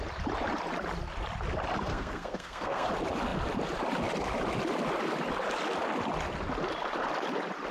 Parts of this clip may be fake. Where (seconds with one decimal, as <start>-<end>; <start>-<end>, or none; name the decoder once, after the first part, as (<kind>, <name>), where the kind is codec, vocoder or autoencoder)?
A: 1.9-2.9 (codec, SNAC)